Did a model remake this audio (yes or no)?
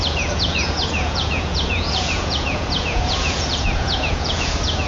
yes